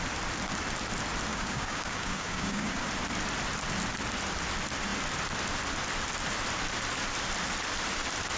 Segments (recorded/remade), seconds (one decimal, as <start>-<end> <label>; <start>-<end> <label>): 0.0-1.3 recorded; 1.3-2.9 remade; 2.9-8.4 recorded